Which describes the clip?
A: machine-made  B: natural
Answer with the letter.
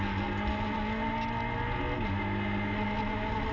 B